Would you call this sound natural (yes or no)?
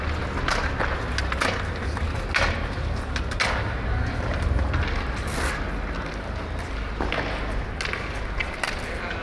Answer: yes